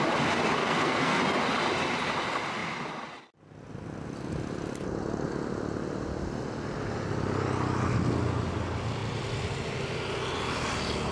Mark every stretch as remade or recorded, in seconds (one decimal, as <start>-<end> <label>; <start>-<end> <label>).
0.0-0.6 recorded; 0.6-1.2 remade; 1.2-11.1 recorded